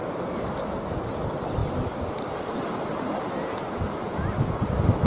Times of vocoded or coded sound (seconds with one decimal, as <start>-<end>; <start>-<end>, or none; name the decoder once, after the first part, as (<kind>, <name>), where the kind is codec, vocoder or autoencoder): none